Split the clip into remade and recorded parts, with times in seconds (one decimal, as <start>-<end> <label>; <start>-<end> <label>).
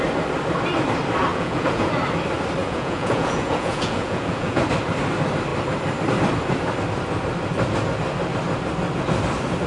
0.0-1.3 recorded; 1.3-1.9 remade; 1.9-2.6 recorded; 2.6-4.6 remade; 4.6-9.7 recorded